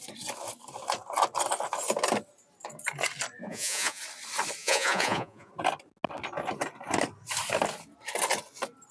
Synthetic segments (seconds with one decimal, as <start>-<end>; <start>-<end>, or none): 3.4-4.0; 4.6-5.5